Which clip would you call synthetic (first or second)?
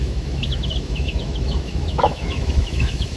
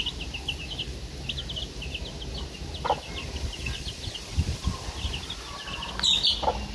first